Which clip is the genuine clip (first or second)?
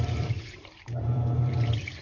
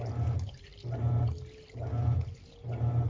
second